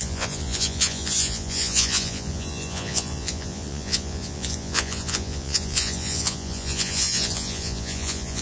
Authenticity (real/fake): fake